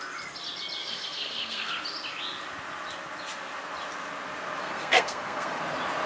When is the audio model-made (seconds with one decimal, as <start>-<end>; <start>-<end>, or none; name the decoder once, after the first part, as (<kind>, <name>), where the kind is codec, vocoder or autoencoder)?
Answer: 0.8-1.7 (codec, SNAC); 4.6-5.6